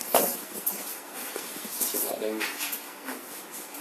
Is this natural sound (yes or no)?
no